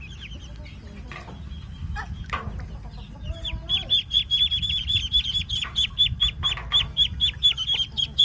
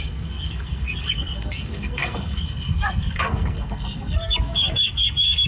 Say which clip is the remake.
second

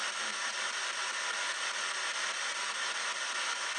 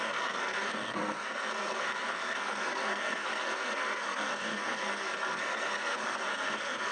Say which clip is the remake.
second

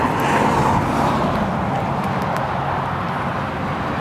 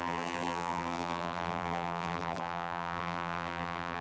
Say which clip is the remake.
second